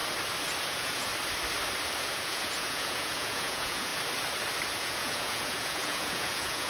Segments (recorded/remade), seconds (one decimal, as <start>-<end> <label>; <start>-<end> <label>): 0.0-0.6 recorded; 0.6-1.1 remade; 1.1-2.0 recorded; 2.0-3.9 remade; 3.9-4.8 recorded; 4.8-6.7 remade